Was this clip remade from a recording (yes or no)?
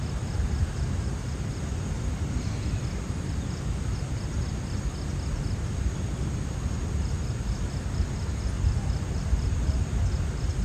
no